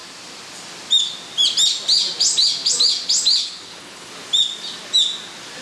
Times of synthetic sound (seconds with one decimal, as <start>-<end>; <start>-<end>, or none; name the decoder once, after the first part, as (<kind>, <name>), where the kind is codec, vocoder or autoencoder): 3.4-4.1 (codec, HILCodec)